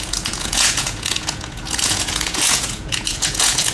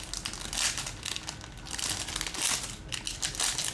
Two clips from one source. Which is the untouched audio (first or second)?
second